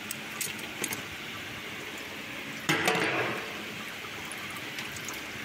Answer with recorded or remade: remade